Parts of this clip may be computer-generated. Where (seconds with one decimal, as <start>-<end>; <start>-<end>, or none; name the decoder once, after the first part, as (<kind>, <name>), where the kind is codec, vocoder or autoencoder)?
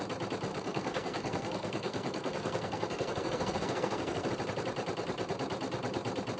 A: 0.5-4.3 (codec, SNAC)